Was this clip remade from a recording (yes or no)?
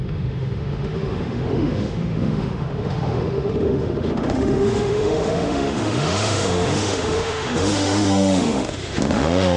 yes